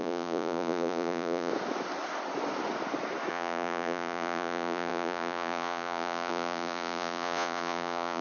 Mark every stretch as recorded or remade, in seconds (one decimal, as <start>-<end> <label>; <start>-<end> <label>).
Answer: 0.0-1.5 remade; 1.5-3.3 recorded; 3.3-8.2 remade

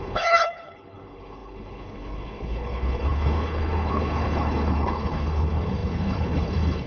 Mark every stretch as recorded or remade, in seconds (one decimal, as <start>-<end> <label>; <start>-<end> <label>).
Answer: 0.0-6.9 remade